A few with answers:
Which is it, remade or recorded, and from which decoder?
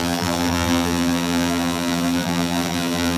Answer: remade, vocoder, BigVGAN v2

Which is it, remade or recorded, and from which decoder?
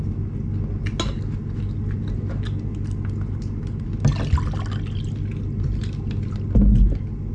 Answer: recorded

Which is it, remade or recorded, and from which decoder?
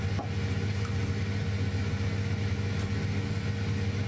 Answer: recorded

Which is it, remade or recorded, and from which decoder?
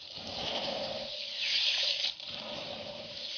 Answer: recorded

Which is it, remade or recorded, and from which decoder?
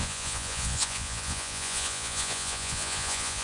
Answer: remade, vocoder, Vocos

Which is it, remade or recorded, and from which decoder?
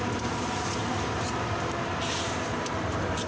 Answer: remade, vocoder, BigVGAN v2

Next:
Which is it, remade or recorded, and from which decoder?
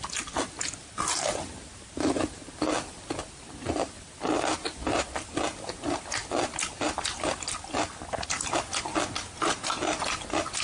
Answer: recorded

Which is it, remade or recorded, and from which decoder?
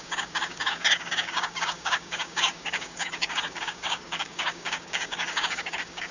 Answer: remade, codec, DAC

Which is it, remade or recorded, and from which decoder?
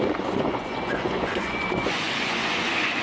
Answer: remade, vocoder, Vocos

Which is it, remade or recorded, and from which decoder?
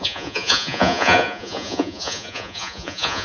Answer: remade, vocoder, Vocos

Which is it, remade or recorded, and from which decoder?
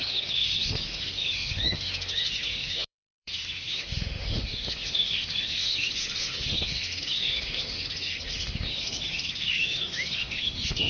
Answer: remade, autoencoder, DAC-VAE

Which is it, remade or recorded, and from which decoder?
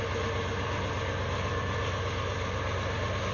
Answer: recorded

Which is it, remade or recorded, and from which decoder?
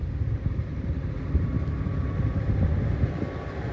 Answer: remade, vocoder, BigVGAN v2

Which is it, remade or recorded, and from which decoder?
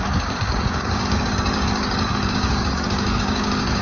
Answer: remade, codec, DAC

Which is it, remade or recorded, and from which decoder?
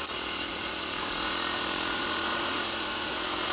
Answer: remade, vocoder, Vocos